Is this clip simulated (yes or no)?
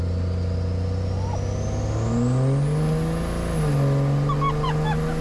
no